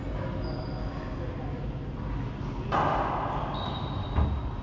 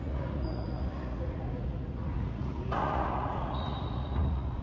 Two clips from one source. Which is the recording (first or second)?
first